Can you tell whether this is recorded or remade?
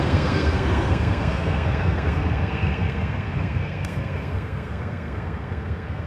remade